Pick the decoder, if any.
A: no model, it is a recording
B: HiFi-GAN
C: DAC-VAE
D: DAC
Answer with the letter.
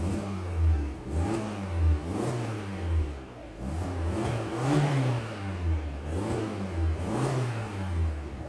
D